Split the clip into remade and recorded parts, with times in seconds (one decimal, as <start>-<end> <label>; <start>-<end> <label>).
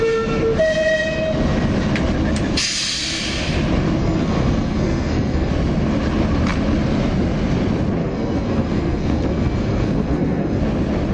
0.0-4.0 recorded; 4.0-5.5 remade; 5.5-8.0 recorded; 8.0-10.6 remade; 10.6-11.1 recorded